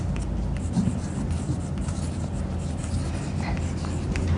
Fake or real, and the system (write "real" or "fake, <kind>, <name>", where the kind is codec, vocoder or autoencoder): real